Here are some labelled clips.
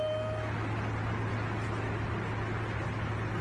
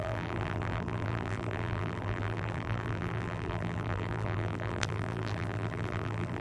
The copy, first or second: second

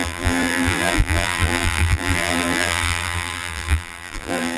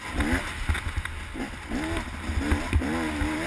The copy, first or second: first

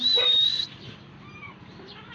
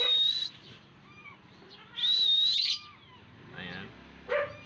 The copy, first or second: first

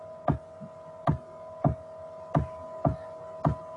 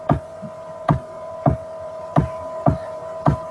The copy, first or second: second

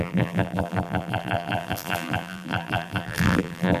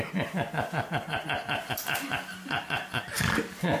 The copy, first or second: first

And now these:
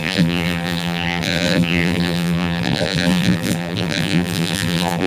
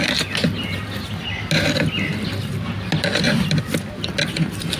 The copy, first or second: first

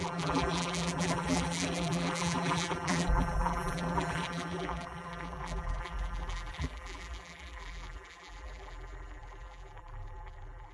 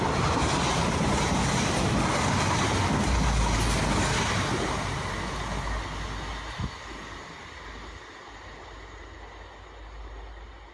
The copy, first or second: first